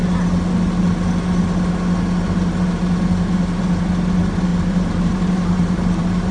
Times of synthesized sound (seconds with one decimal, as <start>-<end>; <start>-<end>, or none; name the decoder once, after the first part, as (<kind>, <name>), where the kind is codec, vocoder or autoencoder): 4.5-6.3 (vocoder, BigVGAN v2)